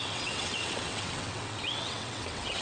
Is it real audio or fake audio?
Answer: fake